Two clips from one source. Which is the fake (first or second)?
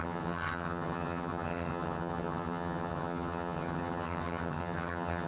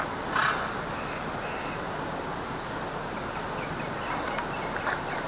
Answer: first